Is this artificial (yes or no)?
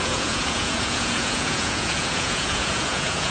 yes